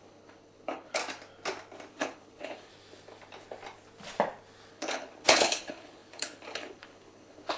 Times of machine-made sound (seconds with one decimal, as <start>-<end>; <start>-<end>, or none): 0.0-1.0; 1.9-2.7; 4.7-7.6